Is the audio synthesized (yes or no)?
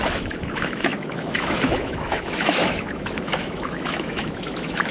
yes